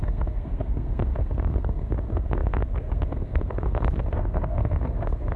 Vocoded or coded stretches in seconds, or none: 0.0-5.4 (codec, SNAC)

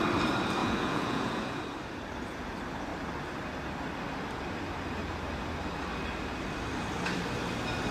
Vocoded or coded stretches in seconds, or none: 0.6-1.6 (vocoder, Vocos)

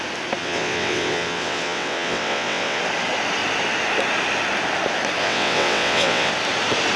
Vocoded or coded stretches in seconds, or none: 0.4-2.8 (vocoder, WaveNeXt); 5.2-6.3